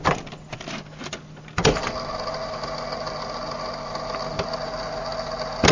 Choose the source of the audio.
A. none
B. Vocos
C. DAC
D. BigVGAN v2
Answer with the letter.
A